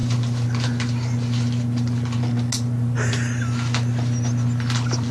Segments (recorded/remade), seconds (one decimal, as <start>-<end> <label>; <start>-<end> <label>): 0.0-5.1 recorded